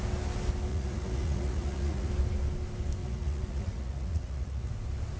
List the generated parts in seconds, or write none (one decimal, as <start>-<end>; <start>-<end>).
0.7-2.1; 3.0-4.7